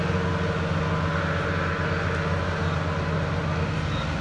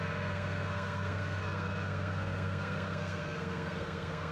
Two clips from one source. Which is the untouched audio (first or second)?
first